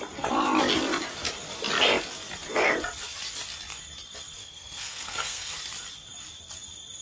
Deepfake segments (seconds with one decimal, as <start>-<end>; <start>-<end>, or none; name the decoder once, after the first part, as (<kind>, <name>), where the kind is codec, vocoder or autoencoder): 4.4-5.6 (codec, SNAC)